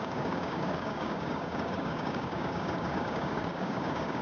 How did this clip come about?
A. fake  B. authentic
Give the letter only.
A